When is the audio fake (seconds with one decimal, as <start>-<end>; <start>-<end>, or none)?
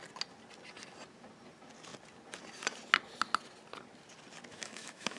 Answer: 4.5-5.2